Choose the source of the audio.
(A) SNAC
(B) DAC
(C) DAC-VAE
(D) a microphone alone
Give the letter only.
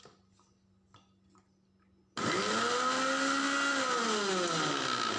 D